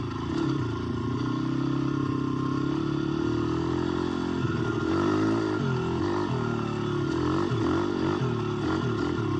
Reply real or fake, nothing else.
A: real